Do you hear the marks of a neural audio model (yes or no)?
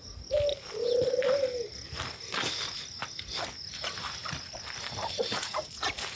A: no